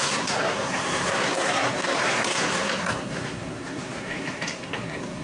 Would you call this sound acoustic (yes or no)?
no